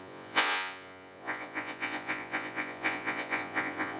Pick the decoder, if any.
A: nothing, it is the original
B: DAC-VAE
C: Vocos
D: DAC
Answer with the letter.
C